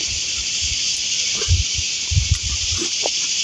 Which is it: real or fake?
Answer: fake